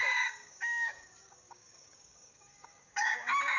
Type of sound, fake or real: fake